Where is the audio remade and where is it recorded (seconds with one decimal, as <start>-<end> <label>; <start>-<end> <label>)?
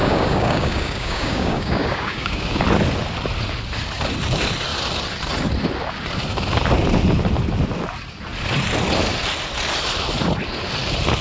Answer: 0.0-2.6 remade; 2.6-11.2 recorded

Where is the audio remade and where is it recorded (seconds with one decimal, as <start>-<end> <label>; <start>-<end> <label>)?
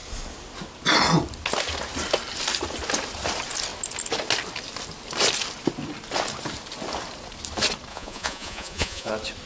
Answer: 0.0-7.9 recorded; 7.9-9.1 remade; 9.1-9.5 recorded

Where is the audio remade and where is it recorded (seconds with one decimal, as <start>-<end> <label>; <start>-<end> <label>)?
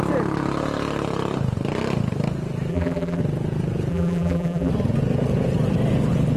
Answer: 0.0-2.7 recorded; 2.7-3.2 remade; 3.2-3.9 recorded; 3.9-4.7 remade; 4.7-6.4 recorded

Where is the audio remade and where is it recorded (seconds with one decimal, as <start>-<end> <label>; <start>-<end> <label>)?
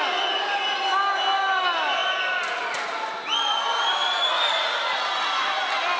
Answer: 0.0-6.0 recorded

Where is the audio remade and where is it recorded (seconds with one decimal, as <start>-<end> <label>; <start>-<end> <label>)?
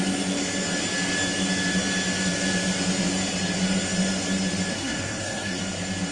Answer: 0.0-4.7 recorded; 4.7-5.6 remade; 5.6-6.1 recorded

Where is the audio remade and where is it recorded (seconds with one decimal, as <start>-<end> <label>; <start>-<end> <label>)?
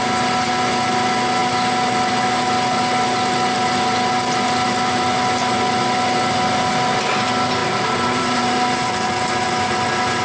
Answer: 0.0-7.6 recorded; 7.6-9.1 remade; 9.1-10.2 recorded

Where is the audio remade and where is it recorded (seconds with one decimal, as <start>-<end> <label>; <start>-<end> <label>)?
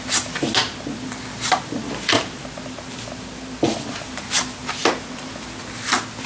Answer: 0.0-6.3 recorded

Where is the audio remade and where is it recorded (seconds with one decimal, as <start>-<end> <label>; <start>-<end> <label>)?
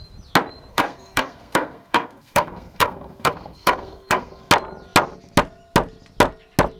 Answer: 0.0-0.7 recorded; 0.7-4.5 remade; 4.5-6.8 recorded